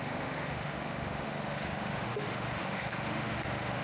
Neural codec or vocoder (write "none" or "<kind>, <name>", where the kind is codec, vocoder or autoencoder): autoencoder, DAC-VAE